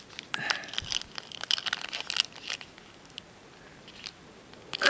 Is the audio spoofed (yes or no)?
no